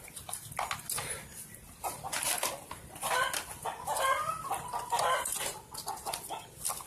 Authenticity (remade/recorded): recorded